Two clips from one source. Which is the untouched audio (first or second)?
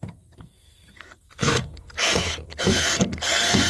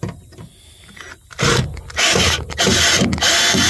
second